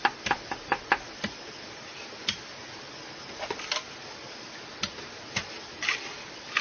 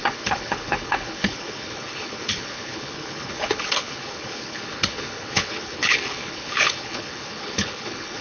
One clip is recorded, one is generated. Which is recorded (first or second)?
first